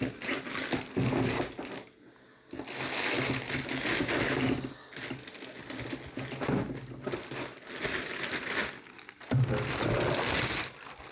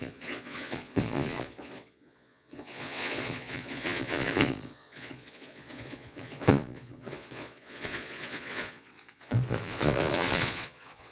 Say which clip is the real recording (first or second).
first